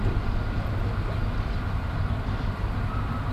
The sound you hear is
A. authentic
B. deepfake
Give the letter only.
B